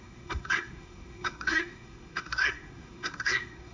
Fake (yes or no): yes